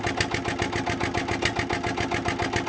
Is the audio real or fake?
real